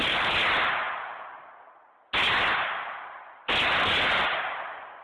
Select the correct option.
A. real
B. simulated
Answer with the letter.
A